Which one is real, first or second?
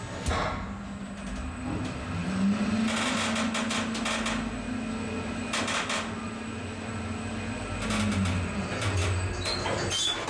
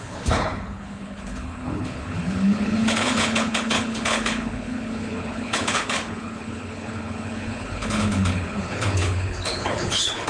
first